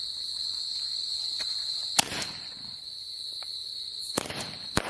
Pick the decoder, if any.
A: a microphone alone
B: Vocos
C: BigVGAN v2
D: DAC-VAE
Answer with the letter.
C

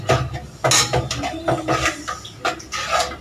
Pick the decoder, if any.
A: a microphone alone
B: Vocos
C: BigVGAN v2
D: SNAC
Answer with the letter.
A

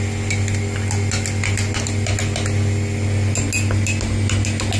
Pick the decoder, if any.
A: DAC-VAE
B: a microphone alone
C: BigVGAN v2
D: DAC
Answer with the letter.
B